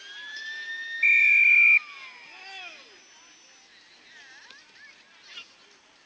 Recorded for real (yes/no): yes